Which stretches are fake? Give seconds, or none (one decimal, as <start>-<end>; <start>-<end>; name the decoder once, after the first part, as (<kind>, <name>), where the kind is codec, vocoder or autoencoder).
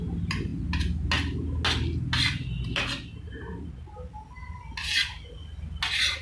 none